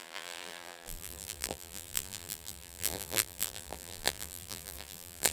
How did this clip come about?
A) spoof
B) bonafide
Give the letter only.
A